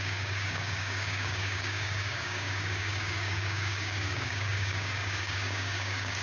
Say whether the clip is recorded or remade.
remade